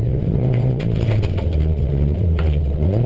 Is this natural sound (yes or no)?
no